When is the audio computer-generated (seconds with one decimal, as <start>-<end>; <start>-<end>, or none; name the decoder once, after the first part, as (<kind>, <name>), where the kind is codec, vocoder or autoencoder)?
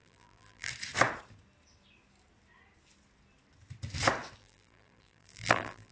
0.0-0.7 (vocoder, BigVGAN v2); 4.4-5.9